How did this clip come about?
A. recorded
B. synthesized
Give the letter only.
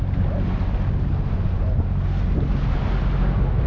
A